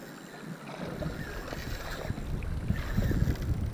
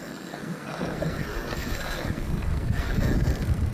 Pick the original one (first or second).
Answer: first